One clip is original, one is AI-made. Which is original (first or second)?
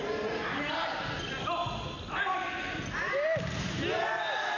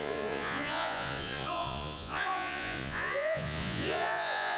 first